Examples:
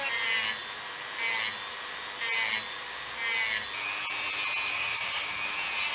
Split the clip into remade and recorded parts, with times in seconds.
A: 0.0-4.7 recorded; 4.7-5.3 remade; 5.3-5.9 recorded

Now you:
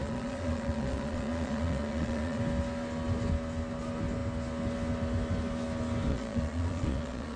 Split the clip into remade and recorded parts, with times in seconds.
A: 0.0-2.4 remade; 2.4-6.1 recorded; 6.1-7.4 remade